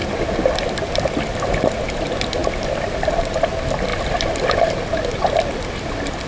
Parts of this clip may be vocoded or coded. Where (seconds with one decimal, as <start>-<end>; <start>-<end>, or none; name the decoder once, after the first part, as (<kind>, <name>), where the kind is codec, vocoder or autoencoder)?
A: none